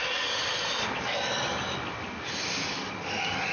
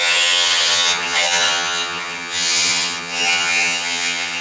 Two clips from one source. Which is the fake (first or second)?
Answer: second